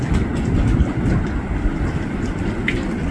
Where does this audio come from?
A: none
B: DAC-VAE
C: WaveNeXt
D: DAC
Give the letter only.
A